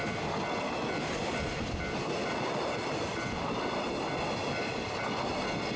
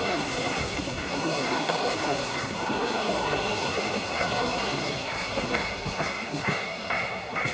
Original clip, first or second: first